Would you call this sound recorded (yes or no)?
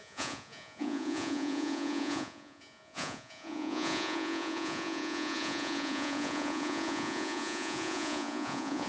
no